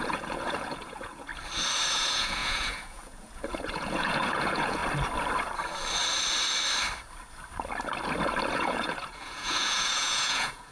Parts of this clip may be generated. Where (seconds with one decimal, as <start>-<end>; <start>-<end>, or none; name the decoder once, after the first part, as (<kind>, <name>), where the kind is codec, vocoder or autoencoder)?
0.0-1.3 (vocoder, Vocos); 1.9-4.8; 8.5-10.7